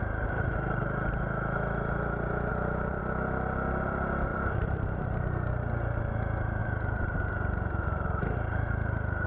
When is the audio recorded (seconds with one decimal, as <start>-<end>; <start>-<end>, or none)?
1.2-2.5; 3.0-4.3; 5.5-6.6